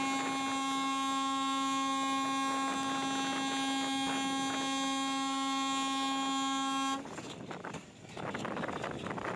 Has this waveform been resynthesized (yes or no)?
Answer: no